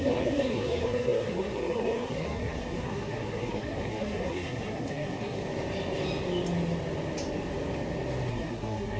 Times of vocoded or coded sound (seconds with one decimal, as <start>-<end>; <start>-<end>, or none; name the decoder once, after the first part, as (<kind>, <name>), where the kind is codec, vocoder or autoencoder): 0.0-5.4 (codec, SNAC); 8.3-9.0